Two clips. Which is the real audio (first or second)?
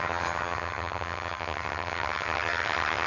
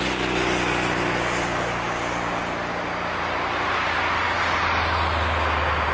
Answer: second